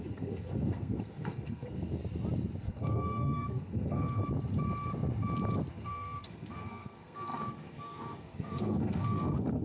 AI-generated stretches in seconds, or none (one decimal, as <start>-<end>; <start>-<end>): 0.0-2.0; 2.6-4.2; 5.7-9.6